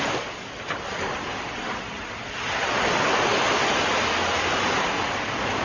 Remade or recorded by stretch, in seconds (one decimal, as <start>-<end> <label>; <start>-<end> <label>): 0.0-5.6 recorded